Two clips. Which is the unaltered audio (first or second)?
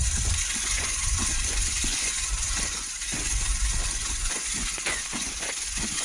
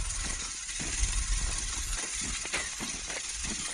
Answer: second